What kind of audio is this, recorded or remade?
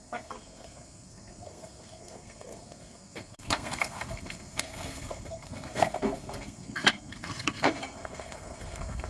remade